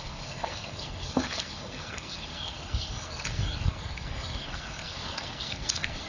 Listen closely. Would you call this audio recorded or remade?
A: remade